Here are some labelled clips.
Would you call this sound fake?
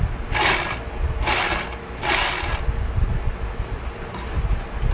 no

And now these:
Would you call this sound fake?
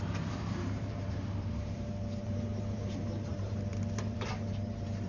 yes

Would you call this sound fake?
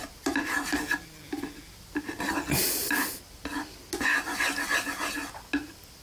no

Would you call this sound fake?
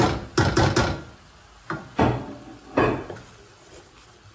no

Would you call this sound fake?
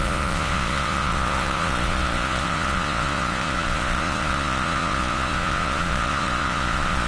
yes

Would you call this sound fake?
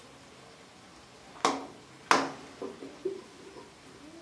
no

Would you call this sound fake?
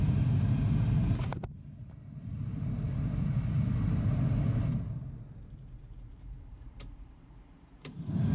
yes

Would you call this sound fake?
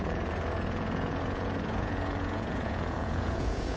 yes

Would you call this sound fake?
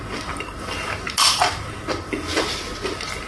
no